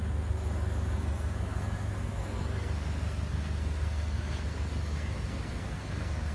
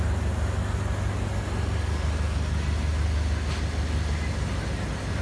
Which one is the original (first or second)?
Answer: second